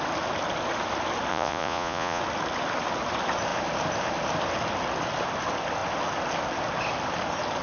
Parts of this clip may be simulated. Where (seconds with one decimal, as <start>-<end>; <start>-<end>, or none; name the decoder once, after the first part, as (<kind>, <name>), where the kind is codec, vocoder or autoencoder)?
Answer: 1.3-2.2 (vocoder, Vocos)